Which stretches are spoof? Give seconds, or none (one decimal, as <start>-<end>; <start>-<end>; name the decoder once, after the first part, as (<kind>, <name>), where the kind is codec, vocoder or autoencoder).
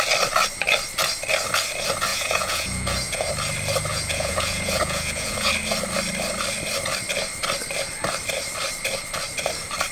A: 2.1-3.3 (vocoder, Vocos); 3.9-5.5